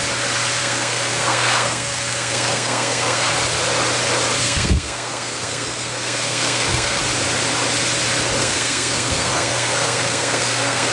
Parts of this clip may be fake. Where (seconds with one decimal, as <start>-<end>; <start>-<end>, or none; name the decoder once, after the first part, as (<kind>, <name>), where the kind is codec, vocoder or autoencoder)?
0.6-3.3 (codec, SNAC); 4.4-7.0; 8.4-10.9